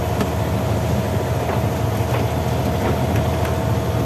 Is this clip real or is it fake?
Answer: real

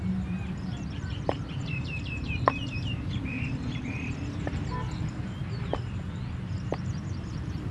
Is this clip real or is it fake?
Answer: fake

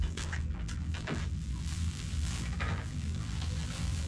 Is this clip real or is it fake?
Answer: fake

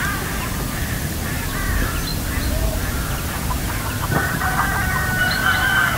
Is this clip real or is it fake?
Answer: real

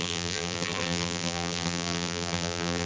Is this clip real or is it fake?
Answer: fake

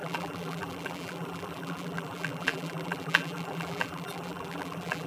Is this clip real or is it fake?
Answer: fake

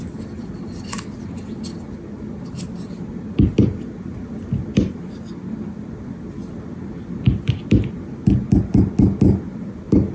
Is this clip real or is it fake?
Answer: real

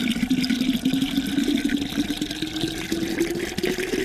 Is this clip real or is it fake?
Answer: real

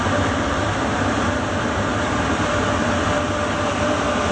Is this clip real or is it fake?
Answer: fake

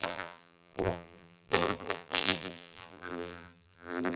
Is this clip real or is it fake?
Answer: fake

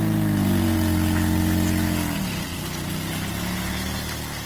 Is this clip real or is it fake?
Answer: real